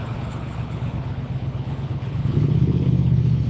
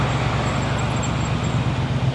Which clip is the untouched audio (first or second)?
second